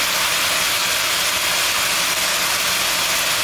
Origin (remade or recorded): recorded